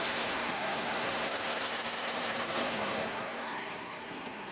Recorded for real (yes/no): no